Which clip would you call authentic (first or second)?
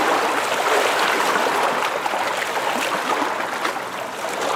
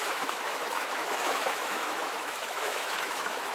first